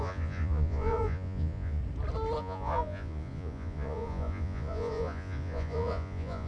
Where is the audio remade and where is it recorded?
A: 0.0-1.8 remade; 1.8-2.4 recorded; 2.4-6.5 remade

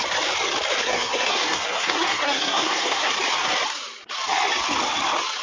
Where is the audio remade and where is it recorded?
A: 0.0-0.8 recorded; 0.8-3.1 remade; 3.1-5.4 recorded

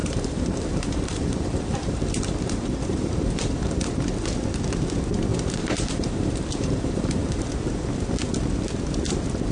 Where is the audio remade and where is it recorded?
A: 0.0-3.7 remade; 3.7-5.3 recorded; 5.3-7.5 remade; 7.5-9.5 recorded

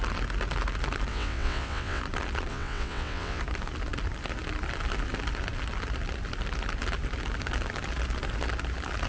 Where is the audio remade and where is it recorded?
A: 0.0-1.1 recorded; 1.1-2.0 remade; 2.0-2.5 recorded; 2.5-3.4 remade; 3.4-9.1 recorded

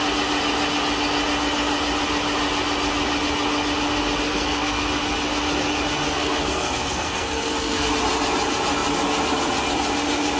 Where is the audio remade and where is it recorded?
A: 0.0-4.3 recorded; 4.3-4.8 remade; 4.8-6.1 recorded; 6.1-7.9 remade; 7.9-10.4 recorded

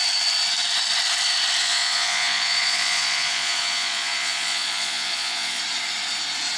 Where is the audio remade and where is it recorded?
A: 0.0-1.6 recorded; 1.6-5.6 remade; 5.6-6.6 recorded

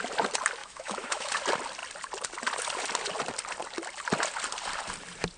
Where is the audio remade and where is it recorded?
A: 0.0-0.6 recorded; 0.6-1.3 remade; 1.3-5.4 recorded